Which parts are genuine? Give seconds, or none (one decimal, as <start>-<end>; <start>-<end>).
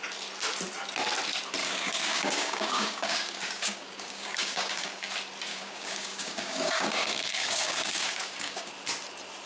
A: 0.0-1.6; 5.1-5.5; 8.7-9.5